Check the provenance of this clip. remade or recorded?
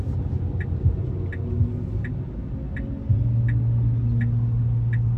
recorded